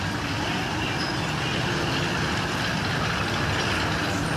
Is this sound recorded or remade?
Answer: recorded